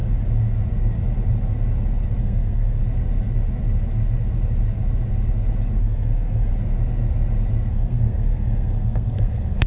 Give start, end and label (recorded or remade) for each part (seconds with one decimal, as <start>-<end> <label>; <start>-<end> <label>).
0.0-2.2 recorded; 2.2-2.8 remade; 2.8-5.8 recorded; 5.8-6.5 remade; 6.5-7.7 recorded; 7.7-9.7 remade